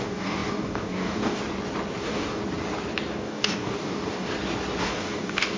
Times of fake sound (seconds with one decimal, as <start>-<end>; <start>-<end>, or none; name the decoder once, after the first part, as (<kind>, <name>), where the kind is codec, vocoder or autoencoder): 0.0-1.4 (codec, DAC); 2.0-2.4; 3.1-4.3; 4.8-5.6